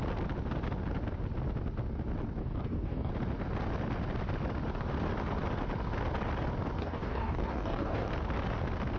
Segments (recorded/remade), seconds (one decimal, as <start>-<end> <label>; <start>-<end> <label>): 0.0-2.4 recorded; 2.4-3.1 remade; 3.1-6.8 recorded; 6.8-8.1 remade; 8.1-9.0 recorded